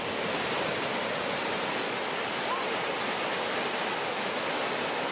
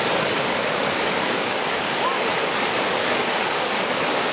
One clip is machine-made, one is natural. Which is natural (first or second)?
first